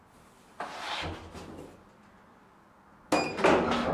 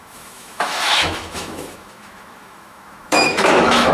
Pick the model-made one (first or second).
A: second